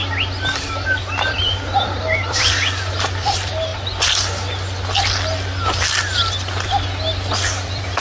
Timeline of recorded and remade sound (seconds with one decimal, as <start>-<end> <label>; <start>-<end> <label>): 0.0-3.7 remade; 3.7-7.3 recorded; 7.3-8.0 remade